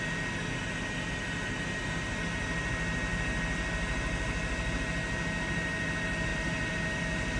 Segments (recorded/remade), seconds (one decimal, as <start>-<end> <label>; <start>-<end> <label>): 0.0-6.3 recorded; 6.3-7.0 remade; 7.0-7.4 recorded